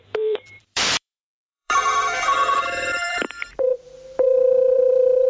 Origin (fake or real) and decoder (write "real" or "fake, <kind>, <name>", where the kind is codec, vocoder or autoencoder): fake, vocoder, BigVGAN v2